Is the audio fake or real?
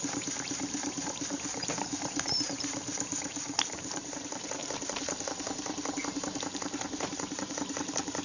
fake